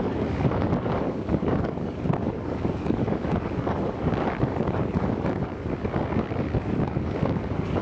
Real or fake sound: fake